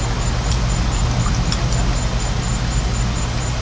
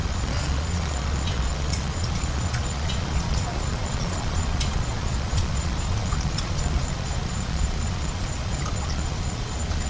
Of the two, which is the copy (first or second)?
second